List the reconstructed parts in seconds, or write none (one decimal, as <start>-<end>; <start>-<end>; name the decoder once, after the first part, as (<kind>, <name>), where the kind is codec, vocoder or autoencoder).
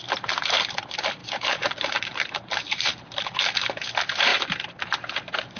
1.2-3.7 (vocoder, BigVGAN v2); 4.3-4.8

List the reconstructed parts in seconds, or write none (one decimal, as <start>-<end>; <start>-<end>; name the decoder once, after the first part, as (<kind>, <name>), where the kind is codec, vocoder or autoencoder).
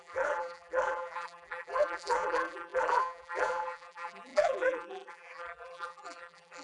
0.0-6.6 (vocoder, BigVGAN v2)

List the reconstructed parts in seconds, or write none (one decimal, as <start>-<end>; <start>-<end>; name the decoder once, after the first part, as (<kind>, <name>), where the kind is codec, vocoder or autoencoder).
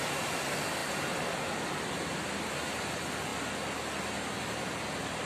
none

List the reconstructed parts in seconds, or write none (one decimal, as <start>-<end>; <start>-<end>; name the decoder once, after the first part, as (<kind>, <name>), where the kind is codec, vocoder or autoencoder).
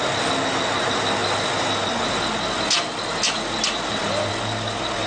none